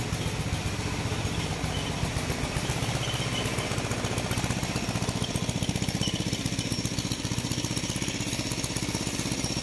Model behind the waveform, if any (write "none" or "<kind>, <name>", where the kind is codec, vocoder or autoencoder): none